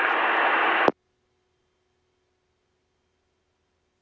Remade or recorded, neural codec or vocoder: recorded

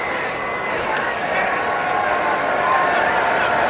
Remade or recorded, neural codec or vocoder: recorded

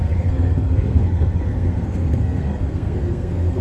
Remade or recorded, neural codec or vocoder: remade, codec, SNAC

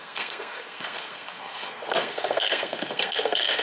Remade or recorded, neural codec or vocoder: remade, codec, SNAC